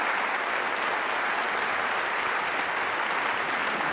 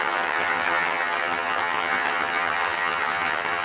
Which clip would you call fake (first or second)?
second